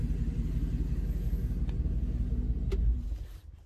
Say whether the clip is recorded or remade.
recorded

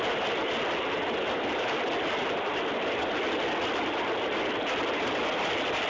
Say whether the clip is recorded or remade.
recorded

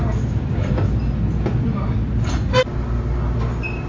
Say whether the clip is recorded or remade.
recorded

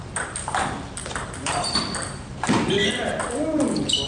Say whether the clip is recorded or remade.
remade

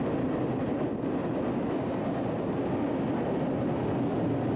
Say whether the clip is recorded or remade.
recorded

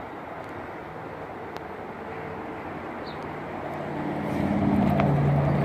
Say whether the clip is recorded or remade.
recorded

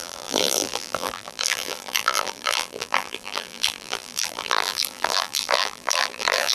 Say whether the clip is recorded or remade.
remade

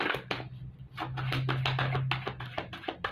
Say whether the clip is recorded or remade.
recorded